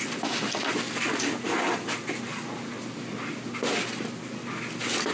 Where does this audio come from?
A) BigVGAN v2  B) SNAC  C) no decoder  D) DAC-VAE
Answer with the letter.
C